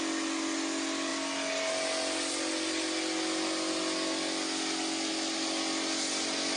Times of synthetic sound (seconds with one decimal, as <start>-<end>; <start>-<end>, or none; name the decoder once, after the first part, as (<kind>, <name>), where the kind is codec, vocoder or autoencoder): none